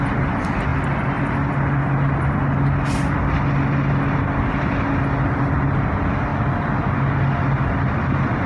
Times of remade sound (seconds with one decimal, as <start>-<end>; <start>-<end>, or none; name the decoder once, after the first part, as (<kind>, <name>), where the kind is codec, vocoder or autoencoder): none